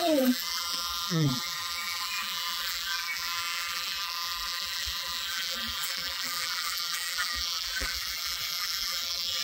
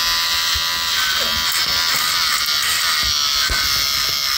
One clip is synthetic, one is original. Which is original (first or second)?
second